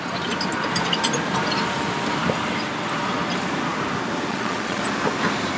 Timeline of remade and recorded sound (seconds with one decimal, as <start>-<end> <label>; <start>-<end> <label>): 0.0-4.3 recorded; 4.3-4.8 remade; 4.8-5.6 recorded